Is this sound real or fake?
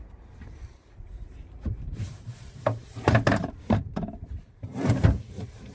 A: fake